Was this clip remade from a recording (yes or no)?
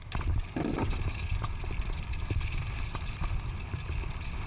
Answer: no